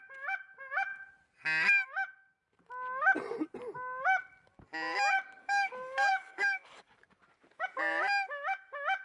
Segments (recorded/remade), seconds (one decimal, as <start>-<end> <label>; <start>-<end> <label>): 0.0-5.4 recorded; 5.4-7.2 remade; 7.2-9.0 recorded